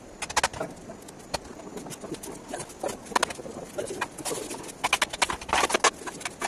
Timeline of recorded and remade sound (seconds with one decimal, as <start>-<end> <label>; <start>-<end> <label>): 0.0-6.5 recorded